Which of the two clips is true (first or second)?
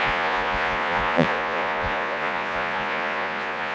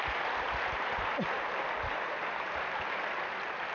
second